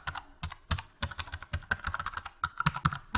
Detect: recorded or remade recorded